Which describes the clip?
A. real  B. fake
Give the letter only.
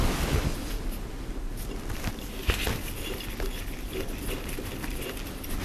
A